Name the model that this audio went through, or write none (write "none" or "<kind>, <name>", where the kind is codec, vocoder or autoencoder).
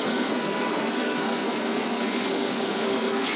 codec, SNAC